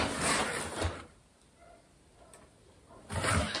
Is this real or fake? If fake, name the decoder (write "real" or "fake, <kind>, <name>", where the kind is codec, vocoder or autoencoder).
real